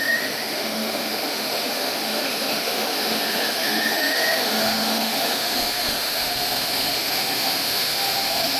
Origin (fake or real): fake